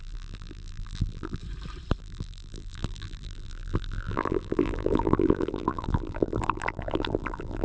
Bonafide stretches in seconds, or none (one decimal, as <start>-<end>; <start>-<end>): 1.4-2.0